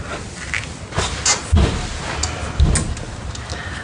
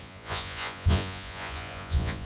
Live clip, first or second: first